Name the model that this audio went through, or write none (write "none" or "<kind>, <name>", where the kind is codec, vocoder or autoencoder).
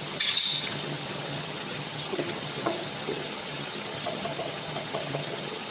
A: vocoder, HiFi-GAN